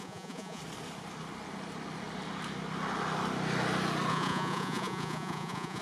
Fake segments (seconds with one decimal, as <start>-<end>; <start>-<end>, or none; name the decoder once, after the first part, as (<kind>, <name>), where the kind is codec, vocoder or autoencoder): 0.0-0.6 (vocoder, Vocos); 4.1-5.8